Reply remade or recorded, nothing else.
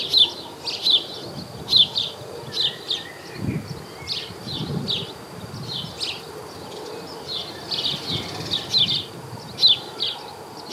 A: recorded